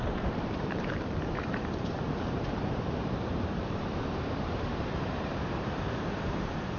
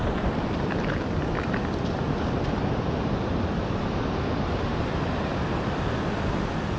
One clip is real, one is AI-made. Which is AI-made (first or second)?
first